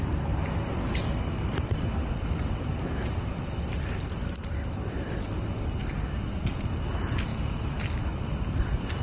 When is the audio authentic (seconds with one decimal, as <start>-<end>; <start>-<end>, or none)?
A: 0.0-9.0